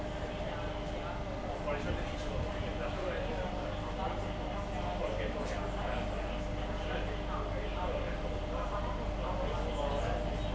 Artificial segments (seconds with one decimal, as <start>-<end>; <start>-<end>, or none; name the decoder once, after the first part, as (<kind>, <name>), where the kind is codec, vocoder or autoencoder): 2.7-3.4 (vocoder, BigVGAN v2); 5.0-5.5; 7.7-9.1